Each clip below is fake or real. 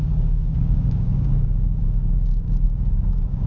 fake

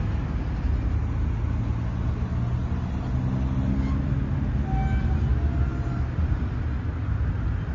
real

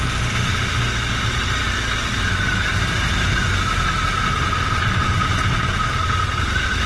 real